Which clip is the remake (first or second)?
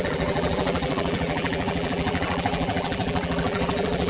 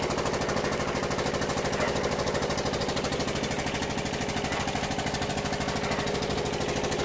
first